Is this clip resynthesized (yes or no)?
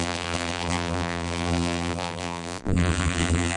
yes